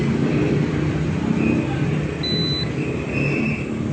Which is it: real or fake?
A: real